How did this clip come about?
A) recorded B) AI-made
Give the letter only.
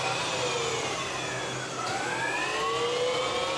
A